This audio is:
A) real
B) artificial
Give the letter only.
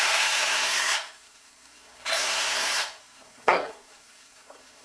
B